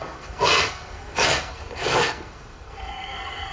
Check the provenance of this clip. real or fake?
fake